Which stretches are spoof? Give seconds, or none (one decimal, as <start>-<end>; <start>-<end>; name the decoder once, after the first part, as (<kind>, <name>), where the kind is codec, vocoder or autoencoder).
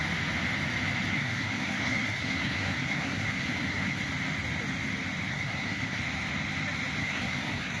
1.1-4.1 (codec, SNAC); 5.3-6.0; 7.0-7.8